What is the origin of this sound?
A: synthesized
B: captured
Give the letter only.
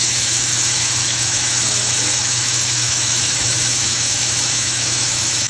A